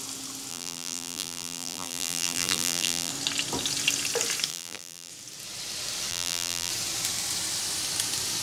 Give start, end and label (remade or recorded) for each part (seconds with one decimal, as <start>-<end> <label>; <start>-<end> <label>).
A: 0.0-0.5 recorded; 0.5-3.1 remade; 3.1-4.5 recorded; 4.5-5.1 remade; 5.1-6.1 recorded; 6.1-6.7 remade; 6.7-8.4 recorded